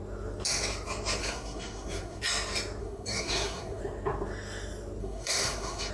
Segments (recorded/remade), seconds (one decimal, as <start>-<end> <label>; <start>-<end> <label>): 0.0-1.2 recorded; 1.2-2.2 remade; 2.2-2.8 recorded; 2.8-3.8 remade; 3.8-5.0 recorded; 5.0-5.9 remade